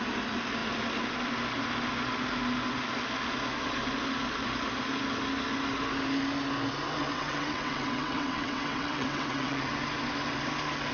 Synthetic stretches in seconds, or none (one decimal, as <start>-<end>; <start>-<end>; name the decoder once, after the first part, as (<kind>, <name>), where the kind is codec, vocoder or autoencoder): 7.0-9.7 (vocoder, WaveNeXt)